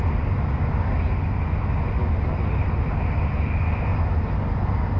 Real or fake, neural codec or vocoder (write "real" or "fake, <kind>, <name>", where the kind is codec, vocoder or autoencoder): real